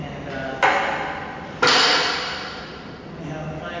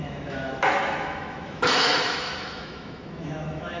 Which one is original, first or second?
first